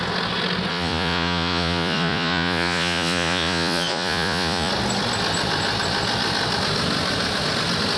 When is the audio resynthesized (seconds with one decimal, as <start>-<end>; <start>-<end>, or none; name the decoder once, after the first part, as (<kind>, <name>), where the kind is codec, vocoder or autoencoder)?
0.7-4.7 (vocoder, Vocos)

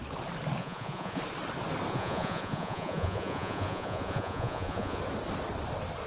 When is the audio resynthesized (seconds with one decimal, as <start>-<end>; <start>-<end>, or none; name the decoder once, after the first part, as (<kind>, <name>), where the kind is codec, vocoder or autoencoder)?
0.6-1.2 (vocoder, Vocos); 1.9-5.0

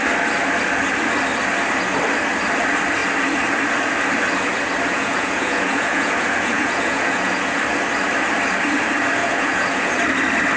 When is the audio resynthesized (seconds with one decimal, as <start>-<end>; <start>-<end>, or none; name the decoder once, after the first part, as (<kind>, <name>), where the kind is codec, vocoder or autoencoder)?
4.9-7.6 (vocoder, Vocos); 9.2-9.9

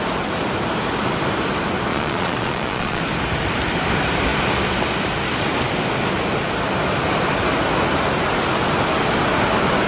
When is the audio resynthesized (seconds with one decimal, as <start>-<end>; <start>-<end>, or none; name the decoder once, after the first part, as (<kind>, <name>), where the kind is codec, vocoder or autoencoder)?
1.9-3.0 (vocoder, Vocos)

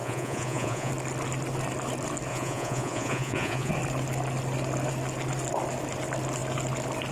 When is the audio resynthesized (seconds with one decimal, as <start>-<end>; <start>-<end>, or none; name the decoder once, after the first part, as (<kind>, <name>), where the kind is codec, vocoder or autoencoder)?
0.0-0.9 (vocoder, Vocos); 2.3-3.7

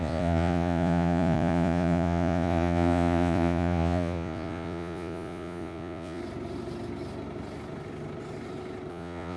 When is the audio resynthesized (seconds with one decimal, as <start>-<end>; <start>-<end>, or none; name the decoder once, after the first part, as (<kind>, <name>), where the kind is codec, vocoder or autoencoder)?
0.0-6.2 (vocoder, Vocos); 8.9-9.4

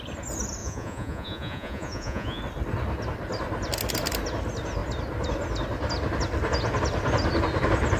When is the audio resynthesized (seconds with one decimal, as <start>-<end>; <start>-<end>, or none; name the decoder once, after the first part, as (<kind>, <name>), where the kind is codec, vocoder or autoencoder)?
0.6-2.4 (vocoder, Vocos)

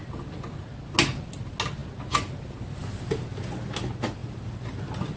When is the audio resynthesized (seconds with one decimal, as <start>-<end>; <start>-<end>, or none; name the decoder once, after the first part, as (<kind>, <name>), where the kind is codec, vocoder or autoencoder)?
none